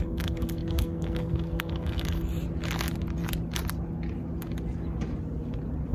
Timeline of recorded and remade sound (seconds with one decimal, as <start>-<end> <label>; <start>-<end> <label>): 0.0-2.3 remade; 2.3-5.9 recorded